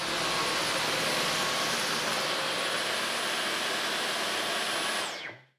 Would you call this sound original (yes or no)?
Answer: yes